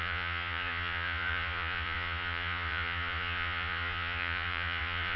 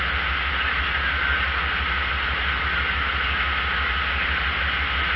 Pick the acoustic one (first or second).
second